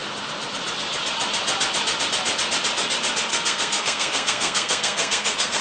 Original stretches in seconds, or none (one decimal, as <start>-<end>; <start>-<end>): 0.0-3.3